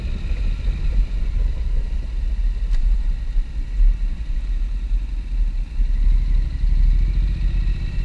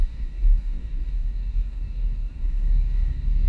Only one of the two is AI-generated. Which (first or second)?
second